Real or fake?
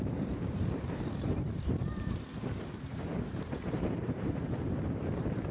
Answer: fake